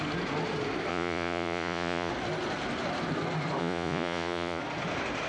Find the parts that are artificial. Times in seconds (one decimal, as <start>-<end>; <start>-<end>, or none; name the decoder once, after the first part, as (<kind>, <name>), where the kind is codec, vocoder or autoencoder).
0.9-2.1 (vocoder, Vocos); 3.6-4.6